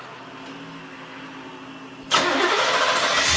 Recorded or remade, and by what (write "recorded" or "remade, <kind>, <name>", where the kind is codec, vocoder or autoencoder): recorded